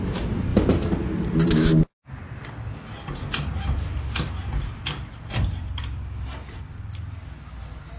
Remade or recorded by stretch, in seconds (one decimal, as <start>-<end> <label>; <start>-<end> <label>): 0.0-8.0 recorded